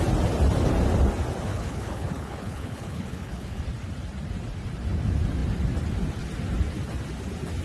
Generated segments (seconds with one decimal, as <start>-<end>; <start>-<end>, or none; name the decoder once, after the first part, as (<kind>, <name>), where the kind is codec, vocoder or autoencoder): 1.5-3.6 (codec, HILCodec)